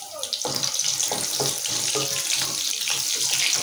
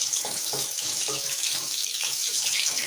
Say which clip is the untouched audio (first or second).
first